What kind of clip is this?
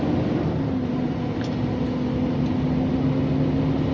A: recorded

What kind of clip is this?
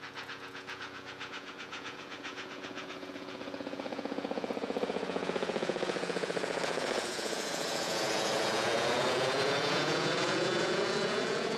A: remade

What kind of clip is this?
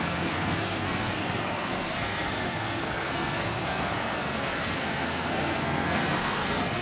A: remade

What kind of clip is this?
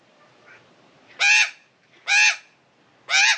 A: recorded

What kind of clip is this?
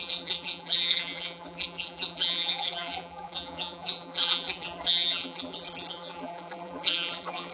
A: remade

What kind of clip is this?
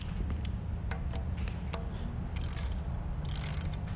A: recorded